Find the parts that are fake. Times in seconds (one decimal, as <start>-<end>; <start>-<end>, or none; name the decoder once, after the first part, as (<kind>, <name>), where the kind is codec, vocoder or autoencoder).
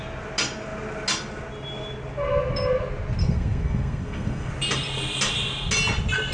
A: 3.2-4.5 (codec, SNAC)